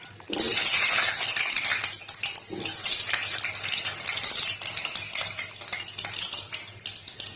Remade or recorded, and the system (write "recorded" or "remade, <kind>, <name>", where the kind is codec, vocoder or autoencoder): recorded